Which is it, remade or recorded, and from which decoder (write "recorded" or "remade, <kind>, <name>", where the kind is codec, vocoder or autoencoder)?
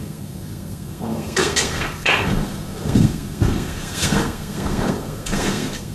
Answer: remade, codec, SNAC